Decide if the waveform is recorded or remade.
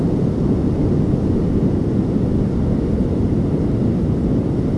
recorded